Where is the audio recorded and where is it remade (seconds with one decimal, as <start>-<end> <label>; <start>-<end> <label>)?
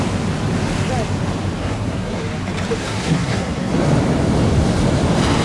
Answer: 0.0-1.6 recorded; 1.6-2.2 remade; 2.2-2.8 recorded; 2.8-3.7 remade; 3.7-5.4 recorded